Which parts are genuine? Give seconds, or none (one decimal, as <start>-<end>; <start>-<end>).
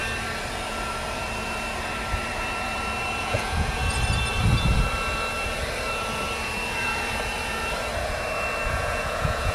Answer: 0.0-3.2; 3.8-8.7